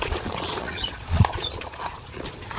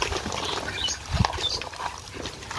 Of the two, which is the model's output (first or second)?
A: first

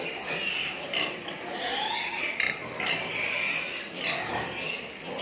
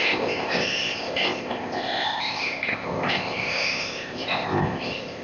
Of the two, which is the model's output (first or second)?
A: second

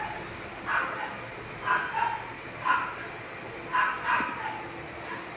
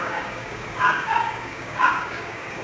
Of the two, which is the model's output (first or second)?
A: second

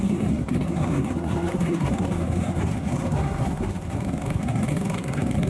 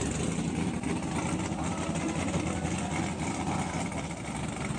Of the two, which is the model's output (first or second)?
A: first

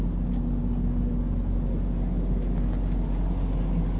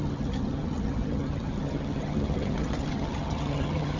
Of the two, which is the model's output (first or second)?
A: second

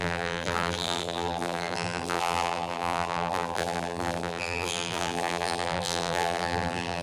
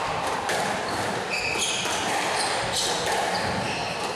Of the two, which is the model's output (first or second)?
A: first